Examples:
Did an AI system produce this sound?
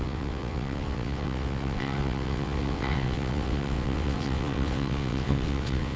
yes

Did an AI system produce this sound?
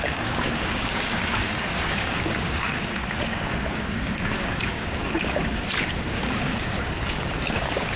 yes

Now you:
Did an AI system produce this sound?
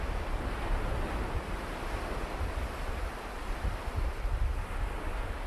no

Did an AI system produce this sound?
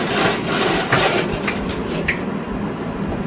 no